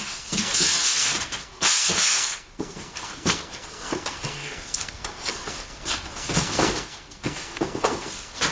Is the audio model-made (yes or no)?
yes